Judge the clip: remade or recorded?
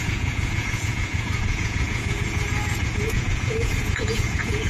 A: remade